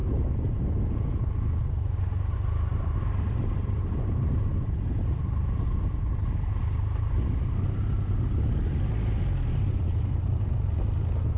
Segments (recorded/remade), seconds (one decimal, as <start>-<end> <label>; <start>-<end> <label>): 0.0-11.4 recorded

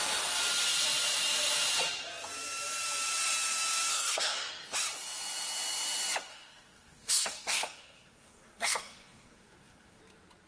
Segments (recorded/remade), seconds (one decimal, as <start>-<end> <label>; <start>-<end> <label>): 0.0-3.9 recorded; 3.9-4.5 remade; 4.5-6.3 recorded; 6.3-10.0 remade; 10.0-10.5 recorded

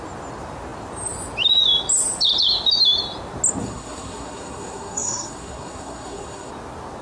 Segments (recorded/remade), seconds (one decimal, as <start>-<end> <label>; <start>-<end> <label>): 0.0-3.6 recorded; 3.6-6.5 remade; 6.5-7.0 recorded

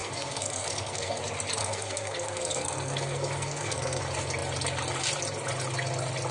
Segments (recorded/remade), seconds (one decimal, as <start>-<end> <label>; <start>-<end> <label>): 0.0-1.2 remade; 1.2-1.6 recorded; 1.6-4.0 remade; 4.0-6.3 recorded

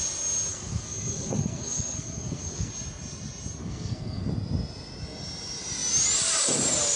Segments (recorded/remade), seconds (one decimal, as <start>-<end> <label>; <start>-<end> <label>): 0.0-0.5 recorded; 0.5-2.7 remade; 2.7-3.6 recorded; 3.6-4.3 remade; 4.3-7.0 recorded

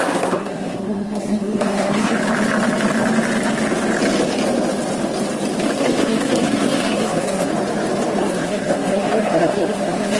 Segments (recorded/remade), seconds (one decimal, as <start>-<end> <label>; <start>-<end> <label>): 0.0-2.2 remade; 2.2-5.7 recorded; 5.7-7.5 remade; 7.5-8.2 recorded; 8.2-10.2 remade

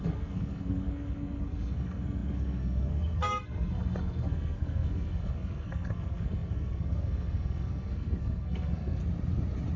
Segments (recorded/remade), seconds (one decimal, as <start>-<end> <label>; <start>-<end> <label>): 0.0-9.0 remade; 9.0-9.8 recorded